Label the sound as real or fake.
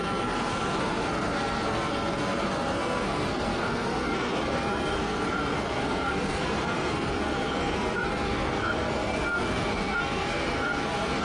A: fake